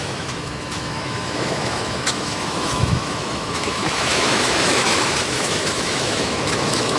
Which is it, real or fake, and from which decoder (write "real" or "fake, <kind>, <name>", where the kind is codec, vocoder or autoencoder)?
fake, autoencoder, DAC-VAE